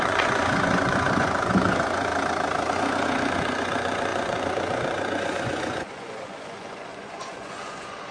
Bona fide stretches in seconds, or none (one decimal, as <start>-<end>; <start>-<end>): 2.1-2.7